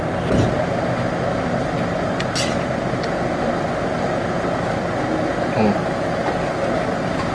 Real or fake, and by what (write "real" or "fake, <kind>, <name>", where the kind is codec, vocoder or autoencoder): real